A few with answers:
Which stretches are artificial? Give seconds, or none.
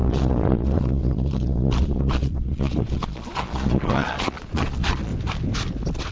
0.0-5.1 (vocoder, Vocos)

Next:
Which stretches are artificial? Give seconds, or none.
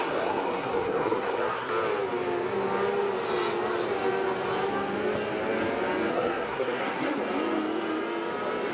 0.0-1.7 (codec, SNAC); 6.1-7.2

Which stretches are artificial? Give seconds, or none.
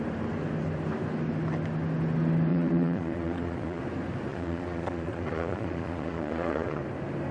2.5-3.8 (vocoder, Vocos); 4.3-6.8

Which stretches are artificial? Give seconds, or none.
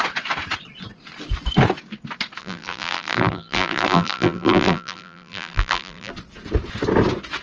2.4-6.1 (vocoder, BigVGAN v2)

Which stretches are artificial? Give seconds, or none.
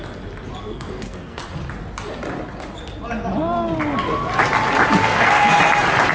0.6-1.4 (codec, SNAC); 5.0-5.6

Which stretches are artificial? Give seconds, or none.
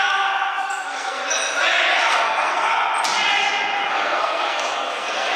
0.0-1.2 (codec, SNAC); 2.1-2.7; 3.9-5.4